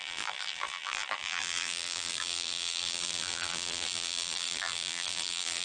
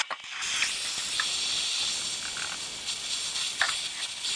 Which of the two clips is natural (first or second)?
second